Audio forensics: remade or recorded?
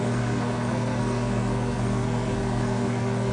remade